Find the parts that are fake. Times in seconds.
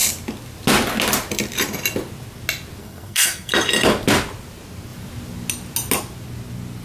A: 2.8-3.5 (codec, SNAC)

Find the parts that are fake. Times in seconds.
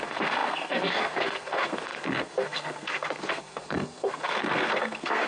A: 0.0-5.3 (codec, SNAC)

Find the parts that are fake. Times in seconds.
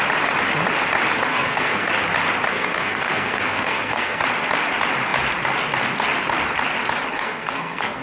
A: 1.3-1.9 (codec, SNAC); 2.5-4.2; 7.1-8.0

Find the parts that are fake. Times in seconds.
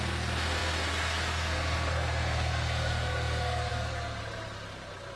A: 0.0-4.2 (codec, SNAC)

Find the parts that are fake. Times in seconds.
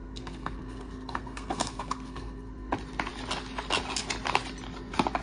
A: 0.0-2.7 (codec, SNAC)